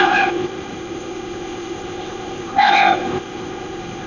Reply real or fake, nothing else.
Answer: fake